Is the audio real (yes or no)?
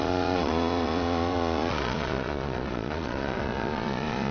no